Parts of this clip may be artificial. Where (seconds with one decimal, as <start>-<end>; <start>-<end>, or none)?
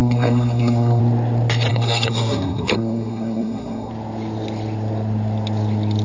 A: 0.0-1.0; 1.7-3.9